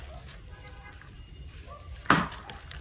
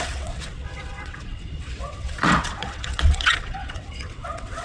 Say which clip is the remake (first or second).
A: second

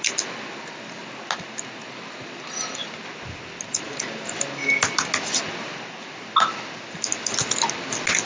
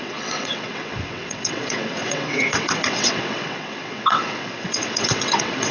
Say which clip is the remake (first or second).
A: second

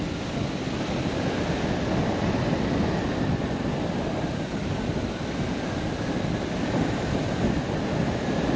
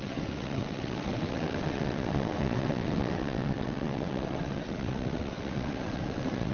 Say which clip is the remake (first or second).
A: second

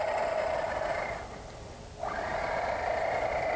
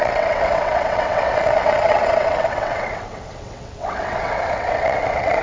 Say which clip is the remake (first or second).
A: second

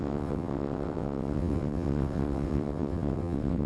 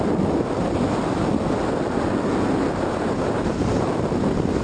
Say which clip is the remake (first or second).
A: first